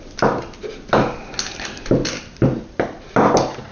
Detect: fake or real real